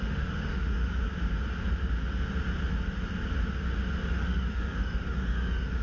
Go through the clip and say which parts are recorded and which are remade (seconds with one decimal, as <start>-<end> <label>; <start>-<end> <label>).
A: 0.0-0.9 remade; 0.9-4.1 recorded; 4.1-5.8 remade